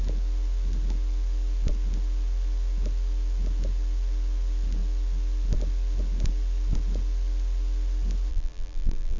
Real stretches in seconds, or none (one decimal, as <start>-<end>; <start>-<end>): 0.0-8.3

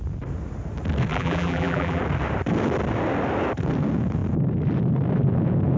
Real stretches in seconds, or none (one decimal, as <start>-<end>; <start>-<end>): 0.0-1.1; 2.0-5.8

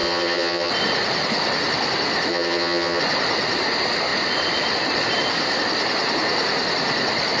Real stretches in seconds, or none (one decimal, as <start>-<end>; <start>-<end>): 0.7-2.3; 3.0-7.4